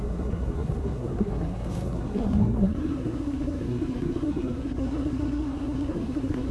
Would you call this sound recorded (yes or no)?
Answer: no